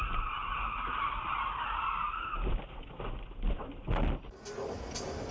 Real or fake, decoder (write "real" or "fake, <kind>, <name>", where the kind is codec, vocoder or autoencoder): real